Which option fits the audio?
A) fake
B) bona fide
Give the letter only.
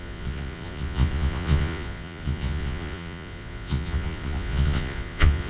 A